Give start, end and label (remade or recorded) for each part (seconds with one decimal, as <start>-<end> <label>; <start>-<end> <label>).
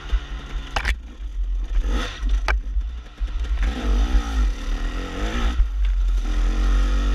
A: 0.0-7.1 recorded